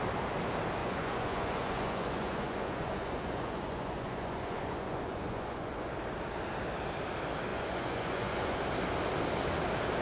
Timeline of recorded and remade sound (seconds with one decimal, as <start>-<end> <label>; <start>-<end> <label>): 0.0-0.8 recorded; 0.8-5.9 remade; 5.9-7.5 recorded; 7.5-8.6 remade; 8.6-10.0 recorded